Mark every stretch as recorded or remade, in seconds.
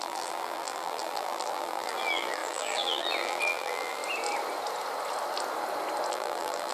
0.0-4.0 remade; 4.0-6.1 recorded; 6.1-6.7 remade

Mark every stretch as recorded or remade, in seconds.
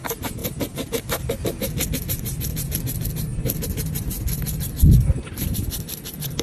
0.0-3.3 recorded; 3.3-4.9 remade; 4.9-6.4 recorded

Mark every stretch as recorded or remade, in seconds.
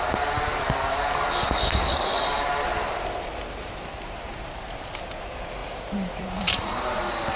0.0-5.6 recorded; 5.6-7.0 remade; 7.0-7.4 recorded